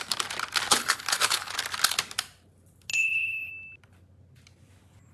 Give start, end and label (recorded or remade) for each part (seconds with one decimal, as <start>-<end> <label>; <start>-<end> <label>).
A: 0.0-0.7 recorded; 0.7-1.5 remade; 1.5-2.9 recorded; 2.9-3.5 remade; 3.5-5.1 recorded